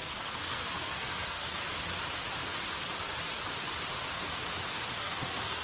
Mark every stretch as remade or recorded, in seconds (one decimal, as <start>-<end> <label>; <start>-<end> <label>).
0.0-1.6 remade; 1.6-5.0 recorded; 5.0-5.6 remade